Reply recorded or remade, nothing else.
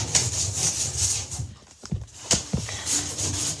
remade